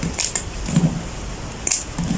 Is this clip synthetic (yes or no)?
no